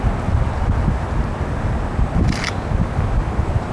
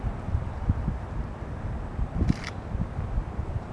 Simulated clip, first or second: second